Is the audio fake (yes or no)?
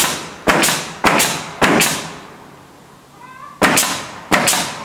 no